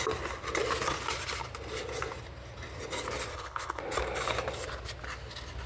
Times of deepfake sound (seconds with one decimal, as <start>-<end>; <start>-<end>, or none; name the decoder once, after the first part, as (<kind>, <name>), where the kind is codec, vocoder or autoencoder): 3.3-3.8 (codec, HILCodec)

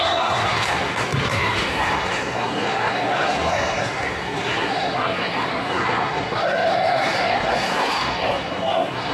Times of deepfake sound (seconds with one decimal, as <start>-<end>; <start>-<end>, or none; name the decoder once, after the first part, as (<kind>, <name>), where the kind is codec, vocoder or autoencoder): 0.0-9.1 (codec, SNAC)

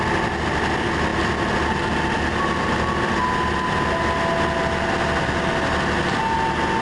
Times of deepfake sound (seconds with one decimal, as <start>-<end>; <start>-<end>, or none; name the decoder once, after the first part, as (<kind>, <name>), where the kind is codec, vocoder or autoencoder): none

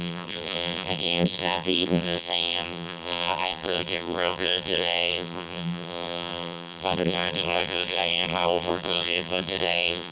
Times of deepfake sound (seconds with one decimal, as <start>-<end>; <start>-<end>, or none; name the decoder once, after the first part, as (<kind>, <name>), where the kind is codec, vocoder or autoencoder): 0.0-10.1 (vocoder, BigVGAN v2)

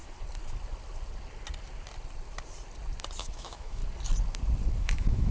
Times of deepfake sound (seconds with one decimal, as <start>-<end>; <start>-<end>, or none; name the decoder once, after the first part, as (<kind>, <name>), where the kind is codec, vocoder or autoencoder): 3.2-3.8 (autoencoder, DAC-VAE); 4.8-5.3